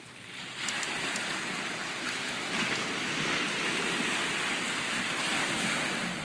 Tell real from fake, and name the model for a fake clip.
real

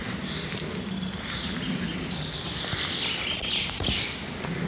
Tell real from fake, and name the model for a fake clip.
real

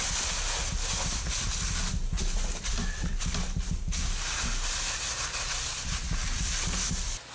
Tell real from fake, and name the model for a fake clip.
real